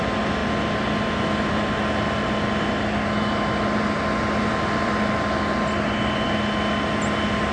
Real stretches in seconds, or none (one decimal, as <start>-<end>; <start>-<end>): 0.0-7.5